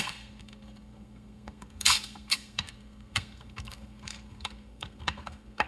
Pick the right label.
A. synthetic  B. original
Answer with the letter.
A